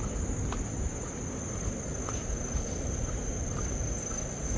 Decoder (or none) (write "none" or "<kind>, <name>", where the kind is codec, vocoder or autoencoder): none